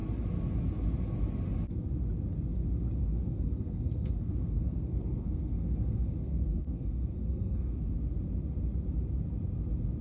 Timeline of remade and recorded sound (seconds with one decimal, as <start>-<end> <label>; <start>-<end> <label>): 0.0-3.1 recorded; 3.1-8.0 remade; 8.0-10.0 recorded